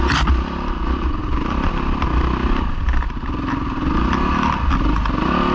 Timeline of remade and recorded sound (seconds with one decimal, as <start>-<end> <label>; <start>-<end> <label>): 0.0-5.5 recorded